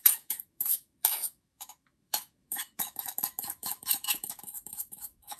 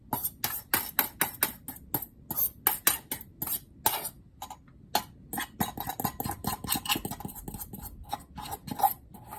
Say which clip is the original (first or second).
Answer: second